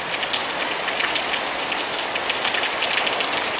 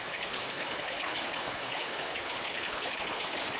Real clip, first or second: first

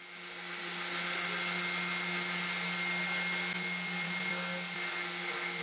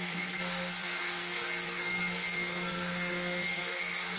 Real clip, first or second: first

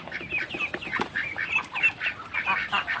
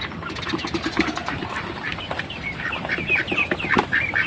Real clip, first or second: first